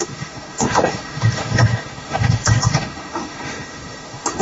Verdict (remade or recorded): remade